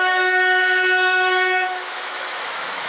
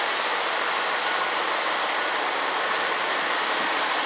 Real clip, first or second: second